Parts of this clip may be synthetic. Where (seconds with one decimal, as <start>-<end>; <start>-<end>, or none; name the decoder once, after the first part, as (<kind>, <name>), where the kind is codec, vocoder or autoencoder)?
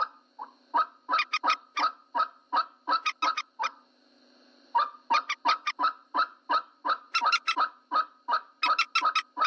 none